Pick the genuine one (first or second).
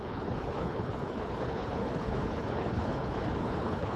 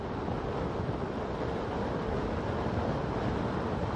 second